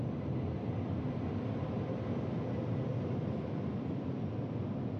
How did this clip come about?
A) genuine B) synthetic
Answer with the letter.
A